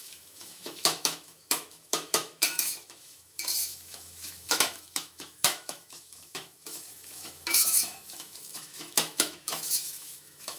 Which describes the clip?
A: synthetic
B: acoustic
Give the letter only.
A